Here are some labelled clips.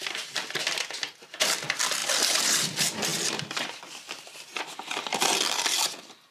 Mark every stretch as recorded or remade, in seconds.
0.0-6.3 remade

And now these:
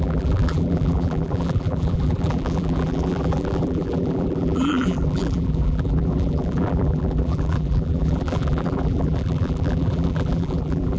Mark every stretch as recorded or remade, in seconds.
0.0-11.0 remade

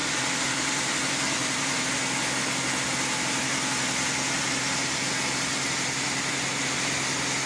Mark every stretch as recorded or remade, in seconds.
0.0-1.9 remade; 1.9-7.5 recorded

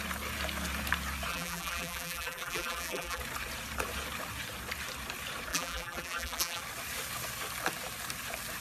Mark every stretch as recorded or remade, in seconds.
0.0-1.3 recorded; 1.3-3.2 remade; 3.2-5.5 recorded; 5.5-6.6 remade; 6.6-8.6 recorded

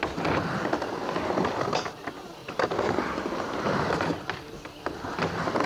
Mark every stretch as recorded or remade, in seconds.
0.0-2.4 recorded; 2.4-5.7 remade

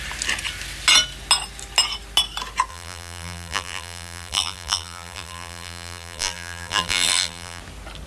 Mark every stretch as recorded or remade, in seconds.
0.0-2.7 recorded; 2.7-7.6 remade; 7.6-8.1 recorded

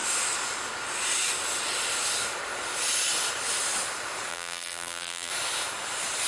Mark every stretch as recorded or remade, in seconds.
0.0-4.3 recorded; 4.3-5.3 remade; 5.3-6.3 recorded

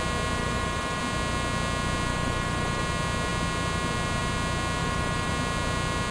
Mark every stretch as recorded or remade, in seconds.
0.0-0.4 recorded; 0.4-1.0 remade; 1.0-2.1 recorded; 2.1-2.8 remade; 2.8-4.8 recorded; 4.8-5.3 remade; 5.3-6.1 recorded